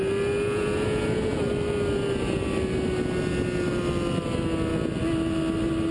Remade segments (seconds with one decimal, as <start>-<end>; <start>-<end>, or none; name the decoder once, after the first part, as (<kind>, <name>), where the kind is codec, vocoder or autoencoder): none